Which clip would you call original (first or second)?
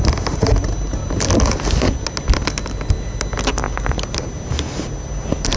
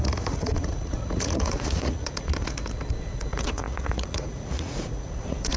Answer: first